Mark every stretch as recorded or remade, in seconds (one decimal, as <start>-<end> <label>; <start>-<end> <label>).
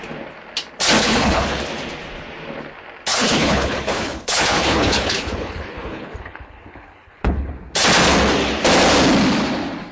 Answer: 0.0-1.0 recorded; 1.0-1.6 remade; 1.6-3.1 recorded; 3.1-7.5 remade; 7.5-9.9 recorded